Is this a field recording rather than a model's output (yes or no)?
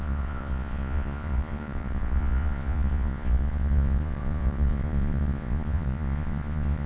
no